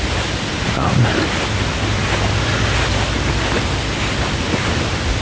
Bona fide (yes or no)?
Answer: yes